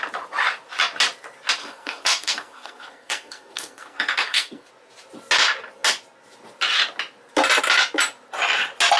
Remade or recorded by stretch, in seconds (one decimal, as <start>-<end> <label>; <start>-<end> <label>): 0.0-1.6 recorded; 1.6-4.7 remade; 4.7-9.0 recorded